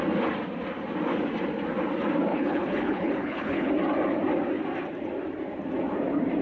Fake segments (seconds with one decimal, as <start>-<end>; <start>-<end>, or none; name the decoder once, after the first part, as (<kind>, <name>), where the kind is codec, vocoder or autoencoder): 2.3-3.7 (codec, HILCodec)